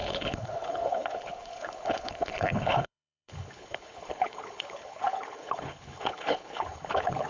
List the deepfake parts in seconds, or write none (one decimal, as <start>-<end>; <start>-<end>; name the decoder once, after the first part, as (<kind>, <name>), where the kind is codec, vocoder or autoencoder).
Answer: 0.0-7.3 (codec, HILCodec)